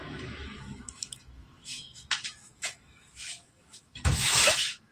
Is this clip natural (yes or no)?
no